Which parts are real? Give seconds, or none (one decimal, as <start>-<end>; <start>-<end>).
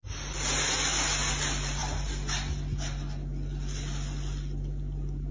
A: 0.0-5.3